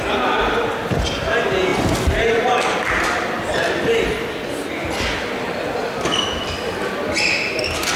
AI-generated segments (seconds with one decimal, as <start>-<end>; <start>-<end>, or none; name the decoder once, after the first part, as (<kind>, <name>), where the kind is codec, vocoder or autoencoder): none